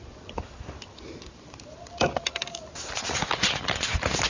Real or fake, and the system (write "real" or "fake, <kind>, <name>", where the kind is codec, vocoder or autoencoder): real